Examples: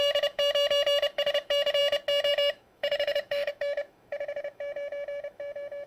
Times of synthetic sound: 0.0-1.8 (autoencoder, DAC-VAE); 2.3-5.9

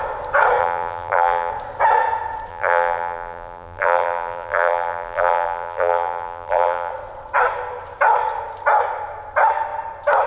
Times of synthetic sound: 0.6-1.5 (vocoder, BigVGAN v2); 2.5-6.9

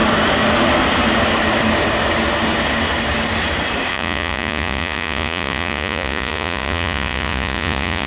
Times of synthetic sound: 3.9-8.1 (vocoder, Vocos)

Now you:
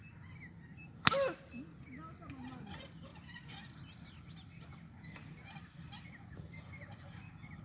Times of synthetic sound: 3.1-7.6 (vocoder, BigVGAN v2)

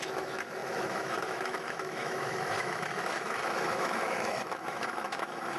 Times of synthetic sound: 0.0-5.6 (autoencoder, DAC-VAE)

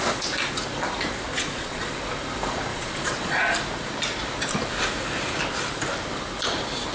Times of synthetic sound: 1.3-1.9 (vocoder, Vocos); 2.7-3.4

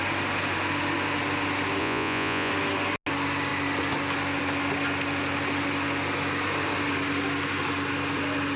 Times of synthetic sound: 1.8-2.5 (vocoder, Vocos)

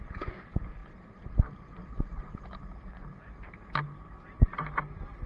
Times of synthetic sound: 0.8-1.3 (vocoder, BigVGAN v2); 1.8-2.6; 4.5-5.3